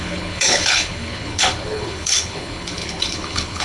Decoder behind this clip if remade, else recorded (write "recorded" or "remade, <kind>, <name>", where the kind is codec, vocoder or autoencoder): remade, codec, HILCodec